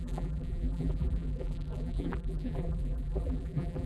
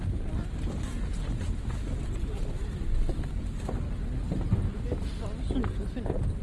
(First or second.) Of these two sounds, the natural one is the second